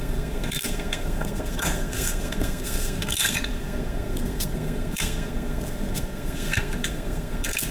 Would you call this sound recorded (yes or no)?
no